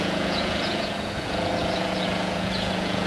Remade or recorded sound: remade